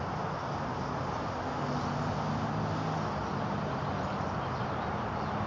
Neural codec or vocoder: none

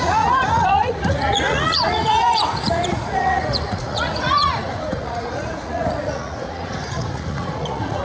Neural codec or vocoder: vocoder, Vocos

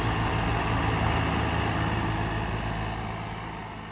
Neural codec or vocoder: none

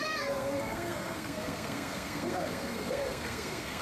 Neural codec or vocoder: codec, SNAC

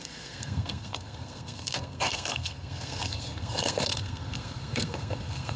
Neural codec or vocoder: codec, SNAC